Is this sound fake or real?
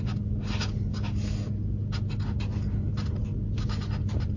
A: real